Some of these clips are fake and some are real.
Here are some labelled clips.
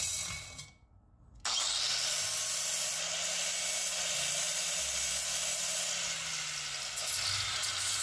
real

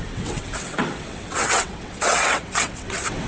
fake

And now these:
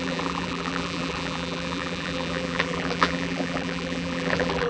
fake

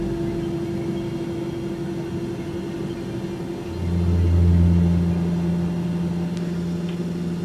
real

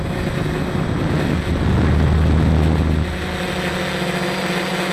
real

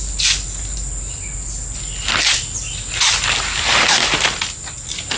real